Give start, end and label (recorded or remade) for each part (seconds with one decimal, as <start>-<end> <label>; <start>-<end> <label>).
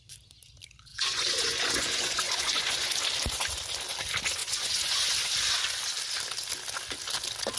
0.0-0.9 recorded; 0.9-3.0 remade; 3.0-4.4 recorded; 4.4-5.1 remade; 5.1-7.6 recorded